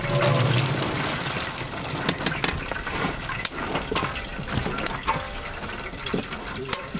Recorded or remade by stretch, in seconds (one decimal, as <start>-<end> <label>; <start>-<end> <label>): 0.0-7.0 recorded